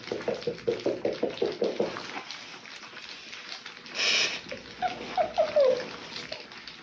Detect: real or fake real